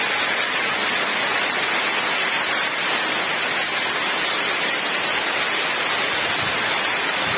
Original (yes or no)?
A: yes